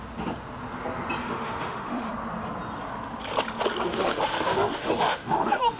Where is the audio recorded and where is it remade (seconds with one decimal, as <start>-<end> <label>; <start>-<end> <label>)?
0.0-1.2 recorded; 1.2-2.1 remade; 2.1-3.9 recorded; 3.9-5.8 remade

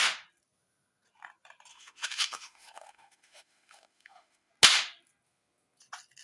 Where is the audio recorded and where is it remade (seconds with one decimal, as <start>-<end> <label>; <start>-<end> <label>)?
0.0-1.7 recorded; 1.7-4.5 remade; 4.5-6.2 recorded

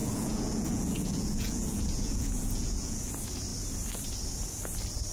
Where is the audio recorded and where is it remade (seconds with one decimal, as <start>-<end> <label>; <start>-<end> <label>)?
0.0-3.1 remade; 3.1-5.1 recorded

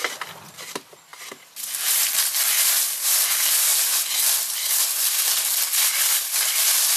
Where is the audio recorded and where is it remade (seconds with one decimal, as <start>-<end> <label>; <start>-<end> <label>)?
0.0-1.1 remade; 1.1-2.2 recorded; 2.2-3.7 remade; 3.7-5.8 recorded; 5.8-7.0 remade